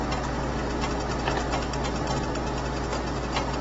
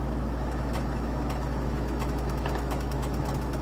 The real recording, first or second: first